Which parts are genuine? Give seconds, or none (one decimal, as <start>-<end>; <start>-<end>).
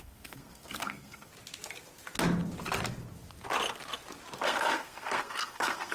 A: 1.3-4.4